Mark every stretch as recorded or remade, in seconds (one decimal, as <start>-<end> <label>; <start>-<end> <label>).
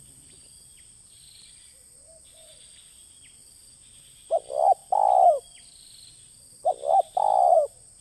0.0-8.0 recorded